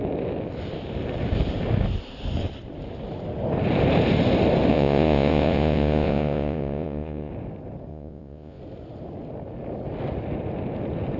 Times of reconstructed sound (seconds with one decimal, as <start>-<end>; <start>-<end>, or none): 4.7-7.3; 7.9-8.6